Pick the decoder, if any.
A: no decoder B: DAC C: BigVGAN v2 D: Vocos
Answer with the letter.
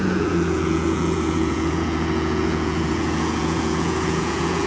D